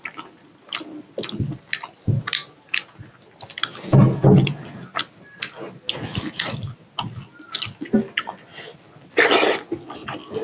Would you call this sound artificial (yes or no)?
no